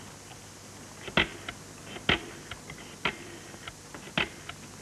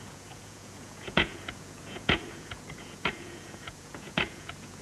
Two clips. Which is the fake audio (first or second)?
second